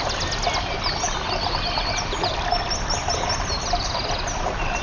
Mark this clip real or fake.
real